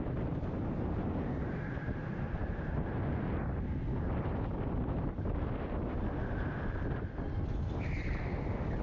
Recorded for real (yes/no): yes